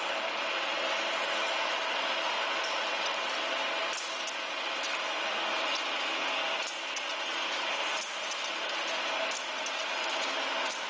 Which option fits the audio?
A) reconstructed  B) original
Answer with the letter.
B